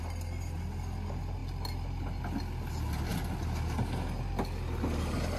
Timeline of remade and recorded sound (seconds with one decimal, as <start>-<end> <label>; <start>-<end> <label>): 0.0-5.4 recorded